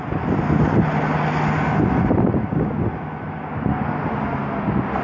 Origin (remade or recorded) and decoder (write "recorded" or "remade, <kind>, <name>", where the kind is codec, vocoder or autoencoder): recorded